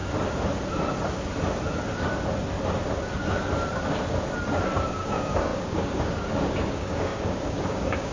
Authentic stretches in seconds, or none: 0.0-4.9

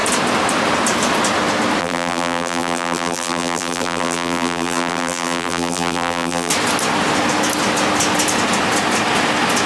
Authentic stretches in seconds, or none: 0.0-1.8; 6.5-9.7

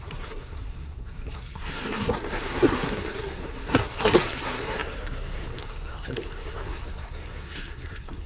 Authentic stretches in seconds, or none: none

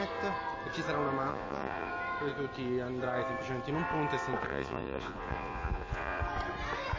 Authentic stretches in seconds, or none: 0.0-1.3; 1.9-4.5; 6.2-7.0

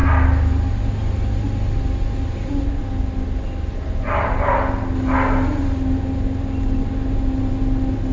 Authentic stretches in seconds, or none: 0.0-8.1

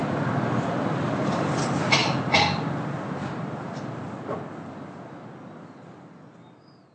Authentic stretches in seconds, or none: 0.0-6.9